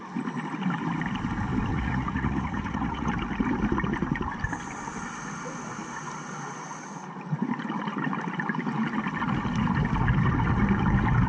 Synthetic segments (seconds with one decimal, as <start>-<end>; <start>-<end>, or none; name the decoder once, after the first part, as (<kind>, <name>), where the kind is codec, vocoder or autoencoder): 1.7-3.1 (vocoder, Vocos)